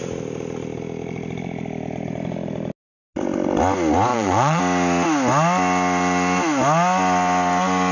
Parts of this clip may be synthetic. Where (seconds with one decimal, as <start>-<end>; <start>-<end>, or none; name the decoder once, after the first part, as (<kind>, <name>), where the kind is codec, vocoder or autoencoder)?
4.1-4.6 (vocoder, Vocos)